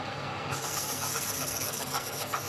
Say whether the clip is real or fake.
fake